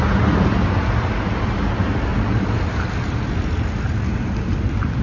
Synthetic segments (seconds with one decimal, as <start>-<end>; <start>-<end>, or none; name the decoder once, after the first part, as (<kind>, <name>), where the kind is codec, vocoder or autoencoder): 0.0-0.5 (vocoder, BigVGAN v2); 1.1-2.1; 4.6-5.0